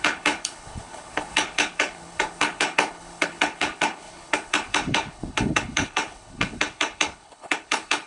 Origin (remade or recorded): remade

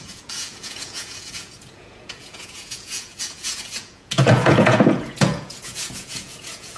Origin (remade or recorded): remade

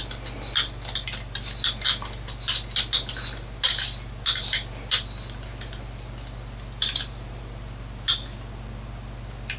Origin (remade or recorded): recorded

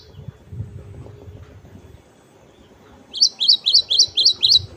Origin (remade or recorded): recorded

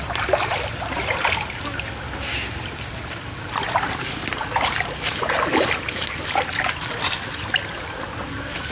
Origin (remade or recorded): recorded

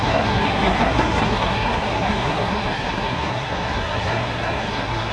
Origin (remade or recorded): remade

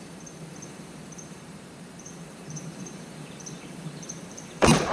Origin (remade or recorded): remade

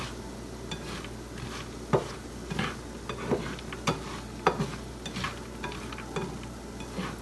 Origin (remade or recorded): recorded